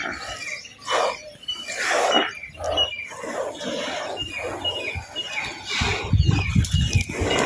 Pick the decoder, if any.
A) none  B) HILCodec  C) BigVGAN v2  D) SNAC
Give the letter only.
A